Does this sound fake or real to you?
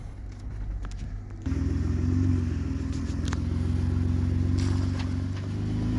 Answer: real